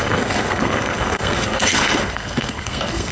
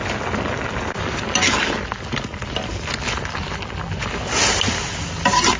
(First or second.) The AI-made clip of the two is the first